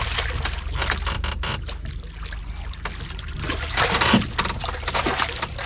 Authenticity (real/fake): real